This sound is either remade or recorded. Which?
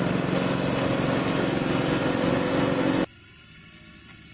recorded